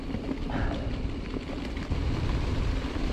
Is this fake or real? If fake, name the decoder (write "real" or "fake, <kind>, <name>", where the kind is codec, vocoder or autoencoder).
real